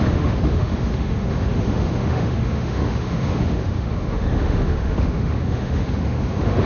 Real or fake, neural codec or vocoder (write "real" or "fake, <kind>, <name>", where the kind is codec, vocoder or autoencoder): fake, autoencoder, DAC-VAE